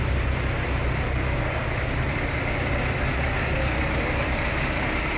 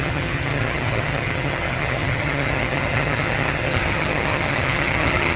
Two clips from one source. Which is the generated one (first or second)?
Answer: second